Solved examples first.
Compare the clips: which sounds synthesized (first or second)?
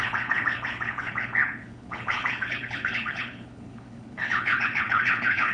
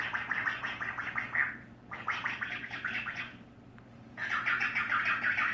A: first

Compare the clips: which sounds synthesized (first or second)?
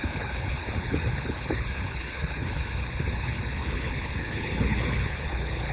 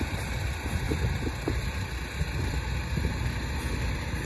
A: first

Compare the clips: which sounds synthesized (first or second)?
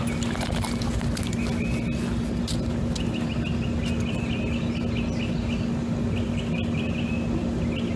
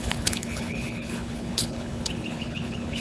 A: second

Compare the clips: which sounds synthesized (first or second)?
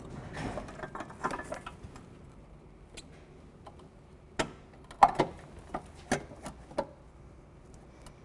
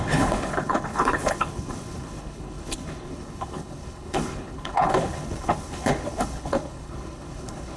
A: second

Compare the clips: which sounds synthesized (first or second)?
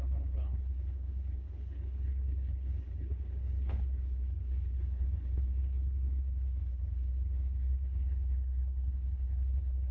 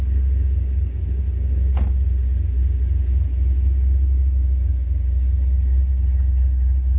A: first